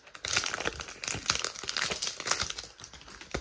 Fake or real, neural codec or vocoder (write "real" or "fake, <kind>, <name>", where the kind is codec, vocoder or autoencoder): real